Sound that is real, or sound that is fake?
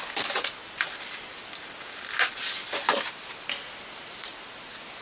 real